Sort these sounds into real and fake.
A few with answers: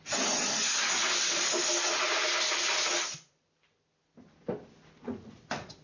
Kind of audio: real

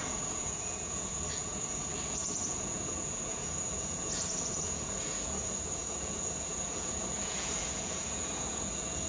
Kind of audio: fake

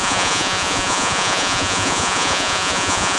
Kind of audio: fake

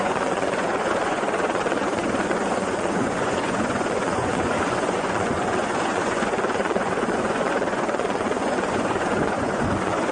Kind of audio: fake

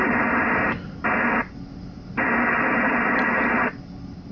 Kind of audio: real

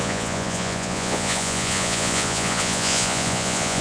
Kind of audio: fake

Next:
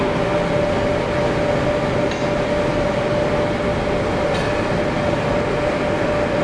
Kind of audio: real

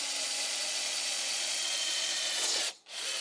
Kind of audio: fake